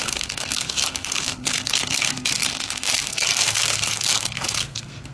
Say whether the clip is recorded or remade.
remade